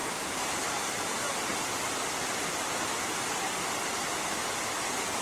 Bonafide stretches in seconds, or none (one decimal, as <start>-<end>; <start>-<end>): 2.6-3.9; 4.6-5.2